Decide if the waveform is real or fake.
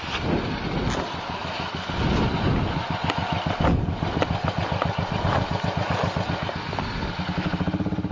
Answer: real